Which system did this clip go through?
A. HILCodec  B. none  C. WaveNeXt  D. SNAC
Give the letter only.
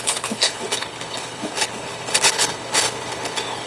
A